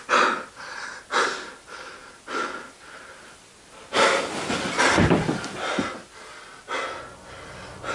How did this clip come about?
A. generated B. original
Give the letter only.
B